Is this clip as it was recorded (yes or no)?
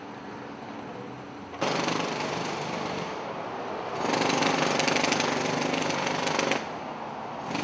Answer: yes